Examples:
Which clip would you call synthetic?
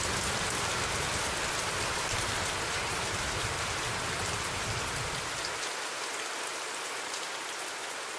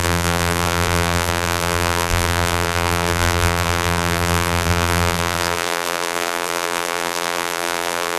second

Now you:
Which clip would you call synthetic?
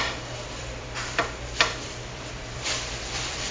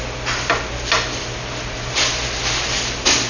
first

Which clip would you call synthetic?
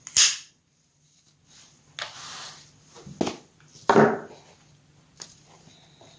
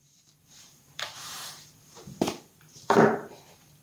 second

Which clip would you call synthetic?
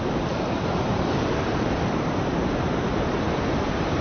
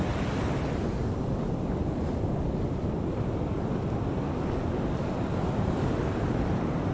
first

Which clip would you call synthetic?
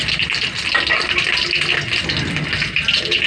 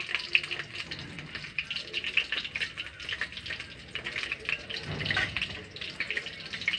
first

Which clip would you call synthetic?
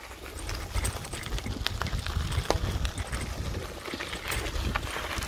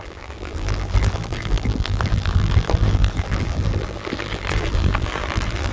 second